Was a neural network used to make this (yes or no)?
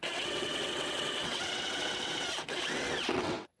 yes